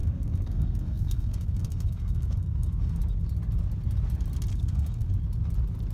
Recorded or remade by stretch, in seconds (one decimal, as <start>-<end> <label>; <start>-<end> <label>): 0.0-3.0 remade; 3.0-4.5 recorded; 4.5-5.1 remade; 5.1-5.9 recorded